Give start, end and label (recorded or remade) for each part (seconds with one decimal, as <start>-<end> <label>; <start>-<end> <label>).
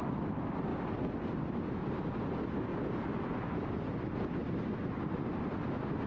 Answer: 0.0-0.7 recorded; 0.7-2.0 remade; 2.0-2.7 recorded; 2.7-3.6 remade; 3.6-4.4 recorded; 4.4-5.0 remade; 5.0-6.1 recorded